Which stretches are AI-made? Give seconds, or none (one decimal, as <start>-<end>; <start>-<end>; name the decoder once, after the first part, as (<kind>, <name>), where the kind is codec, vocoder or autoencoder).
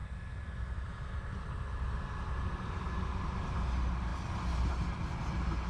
none